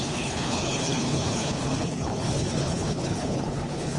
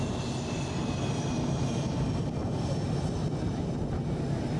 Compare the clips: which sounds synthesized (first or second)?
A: first